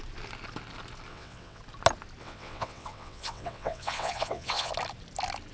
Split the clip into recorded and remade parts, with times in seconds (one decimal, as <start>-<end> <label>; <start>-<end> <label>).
0.0-1.1 recorded; 1.1-1.6 remade; 1.6-2.2 recorded; 2.2-4.7 remade; 4.7-5.5 recorded